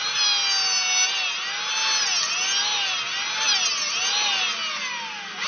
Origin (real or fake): real